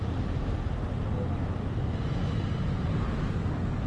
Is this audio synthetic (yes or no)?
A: no